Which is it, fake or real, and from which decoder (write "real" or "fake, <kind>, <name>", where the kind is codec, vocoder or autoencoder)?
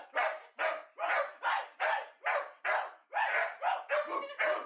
real